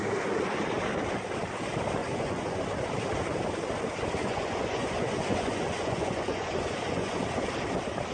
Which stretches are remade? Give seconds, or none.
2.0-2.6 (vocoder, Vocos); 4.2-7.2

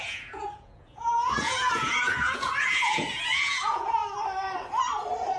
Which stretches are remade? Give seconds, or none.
0.0-4.0 (vocoder, Vocos)